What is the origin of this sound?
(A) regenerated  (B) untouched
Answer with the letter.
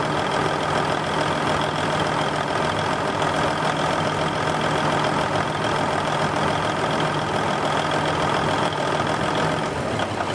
B